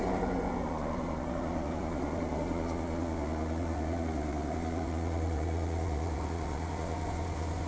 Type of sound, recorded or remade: remade